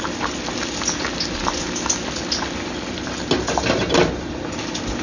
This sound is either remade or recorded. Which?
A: recorded